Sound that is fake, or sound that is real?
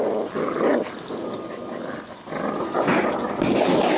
real